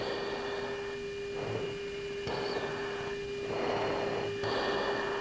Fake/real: real